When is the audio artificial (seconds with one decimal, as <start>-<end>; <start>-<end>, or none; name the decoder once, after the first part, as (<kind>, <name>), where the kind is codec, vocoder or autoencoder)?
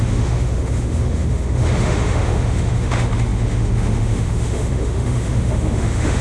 0.0-6.2 (autoencoder, DAC-VAE)